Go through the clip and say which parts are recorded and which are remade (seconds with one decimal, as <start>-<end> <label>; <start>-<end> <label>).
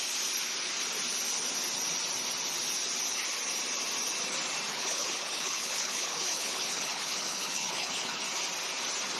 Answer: 0.0-4.7 recorded; 4.7-8.2 remade; 8.2-9.2 recorded